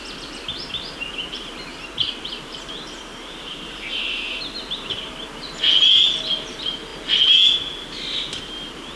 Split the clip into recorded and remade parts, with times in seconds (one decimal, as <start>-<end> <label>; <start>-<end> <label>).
0.0-1.7 recorded; 1.7-3.6 remade; 3.6-9.0 recorded